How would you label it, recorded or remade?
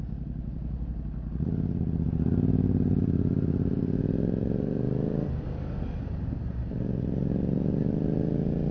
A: recorded